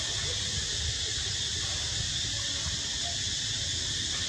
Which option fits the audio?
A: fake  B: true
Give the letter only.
B